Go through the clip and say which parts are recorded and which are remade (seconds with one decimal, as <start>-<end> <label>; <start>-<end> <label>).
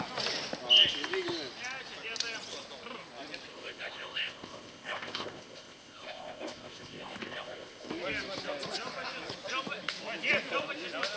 0.0-3.5 recorded; 3.5-7.9 remade; 7.9-11.2 recorded